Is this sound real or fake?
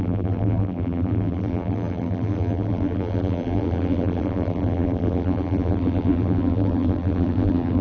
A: fake